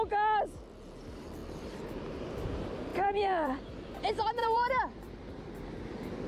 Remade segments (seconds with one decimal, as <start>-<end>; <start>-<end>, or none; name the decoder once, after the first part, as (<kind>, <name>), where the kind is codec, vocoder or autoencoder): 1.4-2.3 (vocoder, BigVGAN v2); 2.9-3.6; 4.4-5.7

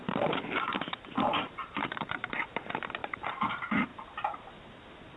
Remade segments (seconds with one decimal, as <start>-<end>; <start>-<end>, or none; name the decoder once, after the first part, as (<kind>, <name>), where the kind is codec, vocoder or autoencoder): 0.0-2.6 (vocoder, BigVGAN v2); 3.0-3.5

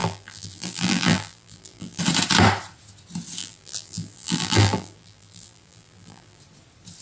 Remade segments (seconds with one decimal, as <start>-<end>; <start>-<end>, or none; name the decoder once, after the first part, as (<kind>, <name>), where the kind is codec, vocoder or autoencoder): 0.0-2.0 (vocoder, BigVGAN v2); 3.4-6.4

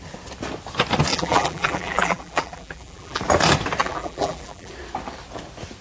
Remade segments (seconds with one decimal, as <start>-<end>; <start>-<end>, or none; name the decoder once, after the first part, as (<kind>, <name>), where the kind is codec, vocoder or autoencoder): 1.1-3.2 (vocoder, BigVGAN v2); 3.8-4.7